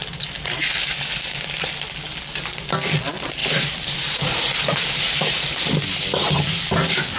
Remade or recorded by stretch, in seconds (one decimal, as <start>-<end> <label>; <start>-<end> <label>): 0.0-0.6 remade; 0.6-3.4 recorded; 3.4-5.3 remade; 5.3-7.2 recorded